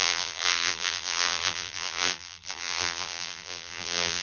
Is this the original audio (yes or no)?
no